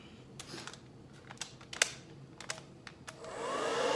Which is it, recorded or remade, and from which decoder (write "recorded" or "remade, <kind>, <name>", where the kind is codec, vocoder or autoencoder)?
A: recorded